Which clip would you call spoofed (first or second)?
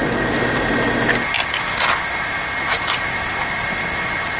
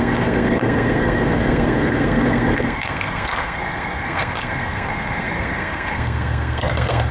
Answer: second